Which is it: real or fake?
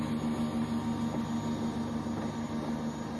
real